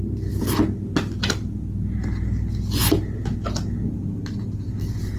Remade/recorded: recorded